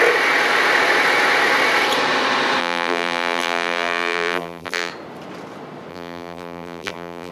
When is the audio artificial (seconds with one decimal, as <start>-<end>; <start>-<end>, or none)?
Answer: 2.6-4.9; 5.9-7.3